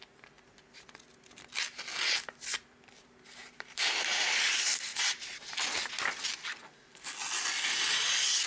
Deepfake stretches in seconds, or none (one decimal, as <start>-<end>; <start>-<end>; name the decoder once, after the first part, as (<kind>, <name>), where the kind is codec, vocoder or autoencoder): 3.4-5.6 (vocoder, BigVGAN v2)